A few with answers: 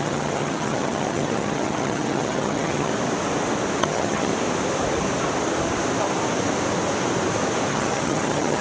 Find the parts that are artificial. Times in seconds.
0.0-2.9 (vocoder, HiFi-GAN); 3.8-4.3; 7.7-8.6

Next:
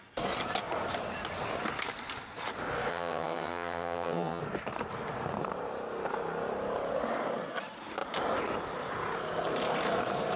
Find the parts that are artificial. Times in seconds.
2.9-4.4 (vocoder, HiFi-GAN)

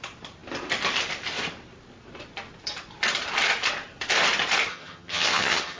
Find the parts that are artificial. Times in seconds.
4.7-5.8 (vocoder, HiFi-GAN)

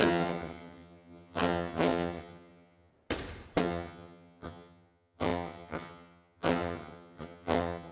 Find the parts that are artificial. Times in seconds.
0.0-2.9 (vocoder, HiFi-GAN); 3.6-7.9

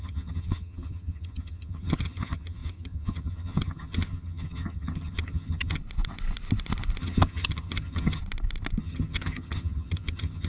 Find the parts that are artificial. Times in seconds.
0.0-5.8 (vocoder, HiFi-GAN); 7.0-8.2; 8.8-10.5

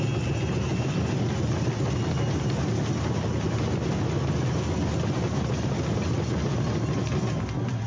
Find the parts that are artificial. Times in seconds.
none